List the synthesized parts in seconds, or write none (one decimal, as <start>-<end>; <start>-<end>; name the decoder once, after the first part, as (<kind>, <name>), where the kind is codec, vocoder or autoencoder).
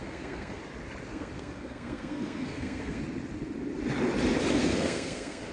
0.0-0.6 (codec, SNAC); 1.1-3.0; 4.6-5.5